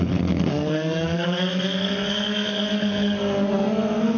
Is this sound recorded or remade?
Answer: remade